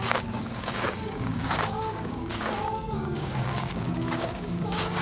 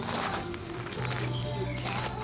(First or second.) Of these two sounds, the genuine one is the second